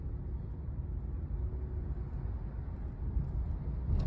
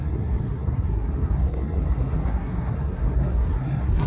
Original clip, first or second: first